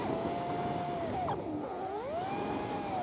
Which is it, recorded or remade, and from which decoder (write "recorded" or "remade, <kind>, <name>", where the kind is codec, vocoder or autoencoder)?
recorded